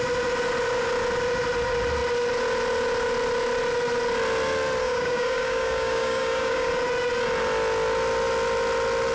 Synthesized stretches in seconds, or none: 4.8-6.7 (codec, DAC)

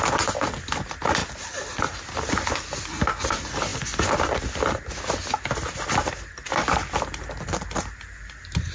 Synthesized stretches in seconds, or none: none

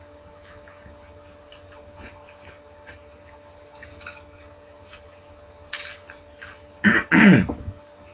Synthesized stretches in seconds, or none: 0.0-8.1 (codec, DAC)

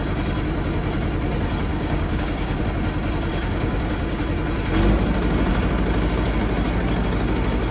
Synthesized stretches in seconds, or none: 1.7-2.6 (codec, DAC); 3.3-4.2

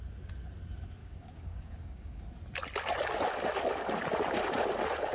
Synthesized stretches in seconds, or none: 1.0-2.2 (codec, DAC)